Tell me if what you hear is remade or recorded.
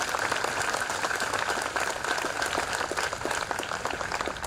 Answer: recorded